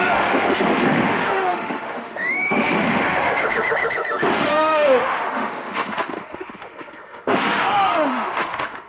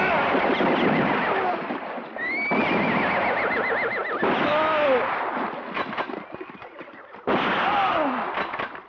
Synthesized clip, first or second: first